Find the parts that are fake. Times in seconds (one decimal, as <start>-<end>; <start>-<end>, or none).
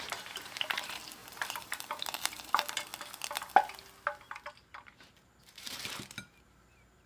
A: 0.0-2.9; 4.5-7.1